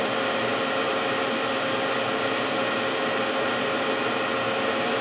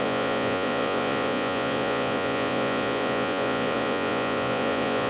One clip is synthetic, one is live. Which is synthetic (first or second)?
second